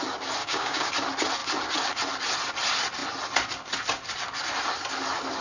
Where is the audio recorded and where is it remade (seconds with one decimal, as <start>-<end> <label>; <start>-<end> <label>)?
0.0-0.4 recorded; 0.4-0.9 remade; 0.9-5.4 recorded